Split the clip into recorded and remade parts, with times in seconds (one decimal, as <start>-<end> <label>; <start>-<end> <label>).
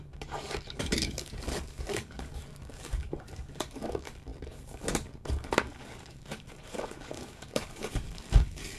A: 0.0-8.8 remade